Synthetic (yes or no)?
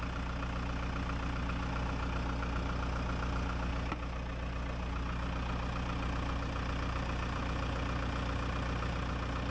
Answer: no